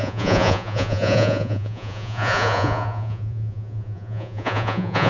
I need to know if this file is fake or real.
fake